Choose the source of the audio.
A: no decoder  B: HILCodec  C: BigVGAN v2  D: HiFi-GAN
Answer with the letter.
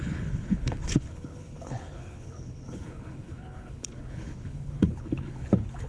B